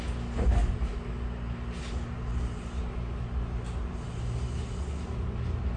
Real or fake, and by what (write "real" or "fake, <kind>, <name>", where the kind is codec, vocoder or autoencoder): real